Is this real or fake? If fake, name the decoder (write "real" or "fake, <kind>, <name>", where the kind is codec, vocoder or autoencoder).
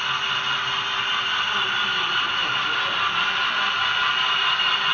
real